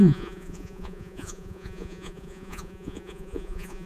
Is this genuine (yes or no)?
no